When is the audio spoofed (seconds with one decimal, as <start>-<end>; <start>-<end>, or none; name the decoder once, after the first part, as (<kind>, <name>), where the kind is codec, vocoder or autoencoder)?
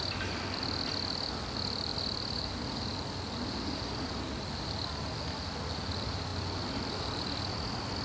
none